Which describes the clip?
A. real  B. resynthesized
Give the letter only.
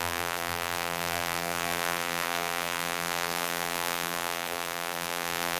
B